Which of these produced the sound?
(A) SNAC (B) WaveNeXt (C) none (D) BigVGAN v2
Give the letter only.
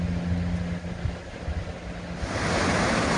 C